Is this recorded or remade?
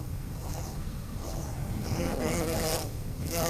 remade